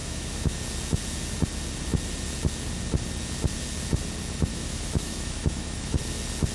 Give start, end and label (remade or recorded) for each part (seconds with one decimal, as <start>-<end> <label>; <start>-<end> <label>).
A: 0.0-0.6 remade; 0.6-4.5 recorded; 4.5-6.0 remade; 6.0-6.5 recorded